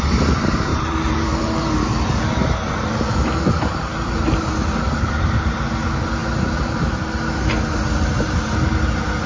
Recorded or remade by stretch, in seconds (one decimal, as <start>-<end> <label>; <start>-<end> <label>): 0.0-0.7 recorded; 0.7-5.1 remade; 5.1-6.2 recorded; 6.2-7.1 remade; 7.1-9.3 recorded